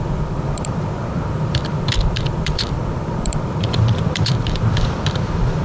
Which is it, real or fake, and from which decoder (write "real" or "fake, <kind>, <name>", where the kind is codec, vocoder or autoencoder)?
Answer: fake, vocoder, BigVGAN v2